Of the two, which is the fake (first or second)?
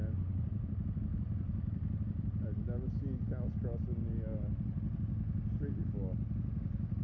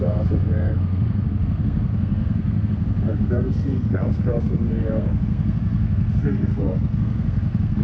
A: second